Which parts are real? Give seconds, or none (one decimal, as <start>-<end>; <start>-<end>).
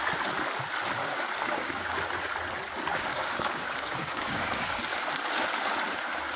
0.0-1.0; 1.9-2.9; 4.8-6.4